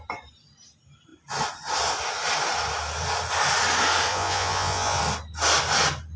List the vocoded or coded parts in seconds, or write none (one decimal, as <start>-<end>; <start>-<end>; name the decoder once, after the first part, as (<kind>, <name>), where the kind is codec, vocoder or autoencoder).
4.1-5.0 (vocoder, Vocos)